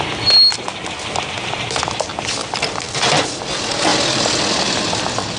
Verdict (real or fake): real